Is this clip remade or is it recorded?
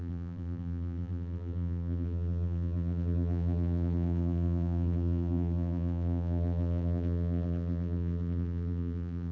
remade